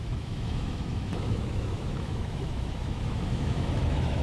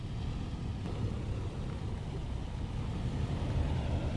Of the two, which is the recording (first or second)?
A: second